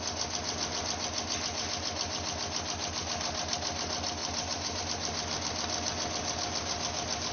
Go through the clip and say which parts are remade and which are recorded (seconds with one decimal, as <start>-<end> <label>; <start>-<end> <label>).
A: 0.0-4.2 recorded; 4.2-4.8 remade; 4.8-7.3 recorded